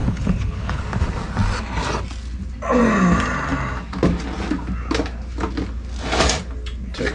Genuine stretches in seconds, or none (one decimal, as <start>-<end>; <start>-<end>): 0.8-7.1